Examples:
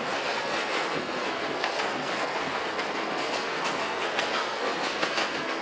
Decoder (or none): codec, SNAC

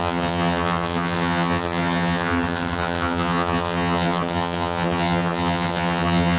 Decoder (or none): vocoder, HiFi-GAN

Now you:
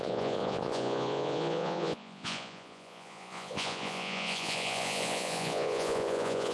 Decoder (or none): vocoder, Vocos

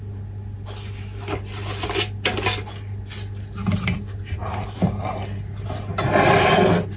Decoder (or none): none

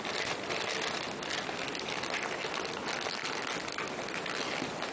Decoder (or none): none